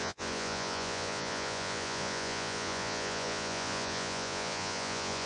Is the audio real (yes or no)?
no